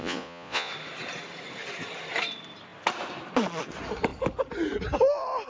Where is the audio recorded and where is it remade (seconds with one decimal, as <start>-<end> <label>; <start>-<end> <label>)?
0.0-0.7 remade; 0.7-5.5 recorded